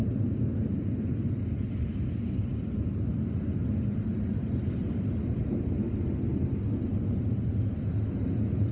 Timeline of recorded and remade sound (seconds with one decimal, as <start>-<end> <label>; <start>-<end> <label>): 0.0-8.7 recorded

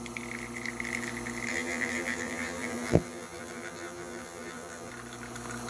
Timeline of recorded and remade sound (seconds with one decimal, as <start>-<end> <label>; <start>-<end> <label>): 0.0-1.5 recorded; 1.5-4.9 remade; 4.9-5.7 recorded

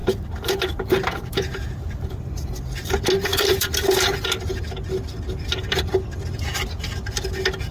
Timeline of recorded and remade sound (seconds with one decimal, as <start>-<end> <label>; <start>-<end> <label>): 0.0-4.6 remade; 4.6-7.7 recorded

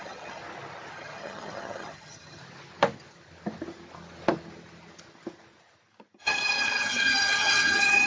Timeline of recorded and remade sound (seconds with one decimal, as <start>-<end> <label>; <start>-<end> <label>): 0.0-0.4 remade; 0.4-0.9 recorded; 0.9-2.4 remade; 2.4-6.2 recorded; 6.2-8.1 remade

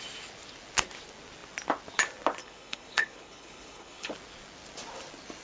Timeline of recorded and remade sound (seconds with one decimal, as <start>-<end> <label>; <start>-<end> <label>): 0.0-2.4 recorded; 2.4-4.1 remade; 4.1-5.4 recorded

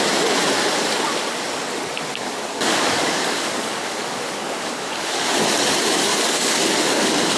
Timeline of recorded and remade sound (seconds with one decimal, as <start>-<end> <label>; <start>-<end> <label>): 0.0-2.1 recorded; 2.1-5.4 remade; 5.4-6.1 recorded; 6.1-7.4 remade

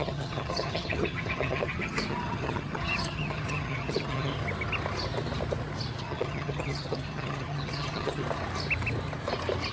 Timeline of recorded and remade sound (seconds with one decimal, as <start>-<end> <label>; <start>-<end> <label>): 0.0-4.3 remade; 4.3-6.0 recorded; 6.0-8.2 remade; 8.2-9.7 recorded

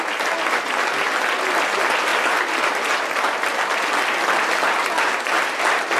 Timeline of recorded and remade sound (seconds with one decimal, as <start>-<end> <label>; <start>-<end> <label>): 0.0-6.0 recorded